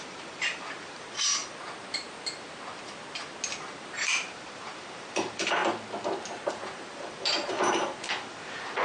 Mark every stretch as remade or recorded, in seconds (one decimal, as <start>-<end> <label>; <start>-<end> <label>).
0.0-1.4 remade; 1.4-3.7 recorded; 3.7-5.6 remade; 5.6-6.5 recorded; 6.5-8.8 remade